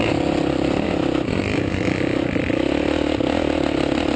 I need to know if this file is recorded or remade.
recorded